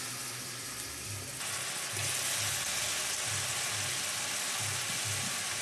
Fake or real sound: real